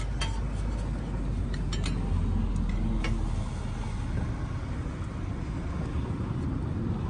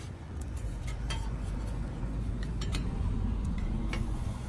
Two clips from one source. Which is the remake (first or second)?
second